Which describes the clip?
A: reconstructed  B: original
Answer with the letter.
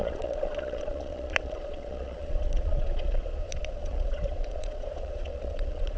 A